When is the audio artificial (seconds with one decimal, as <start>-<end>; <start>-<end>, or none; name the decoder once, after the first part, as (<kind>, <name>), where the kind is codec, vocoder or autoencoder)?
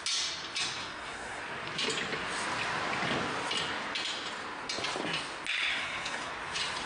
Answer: 0.8-1.4 (codec, SNAC); 5.7-6.3